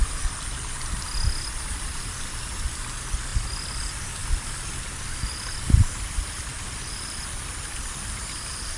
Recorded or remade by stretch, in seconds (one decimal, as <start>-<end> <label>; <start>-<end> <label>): 0.0-3.3 recorded; 3.3-3.8 remade; 3.8-4.2 recorded; 4.2-5.3 remade; 5.3-8.8 recorded